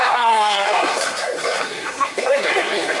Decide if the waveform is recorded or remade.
remade